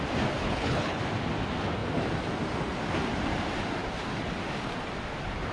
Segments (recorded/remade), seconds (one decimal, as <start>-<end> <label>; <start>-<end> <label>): 0.0-0.4 recorded; 0.4-1.0 remade; 1.0-5.5 recorded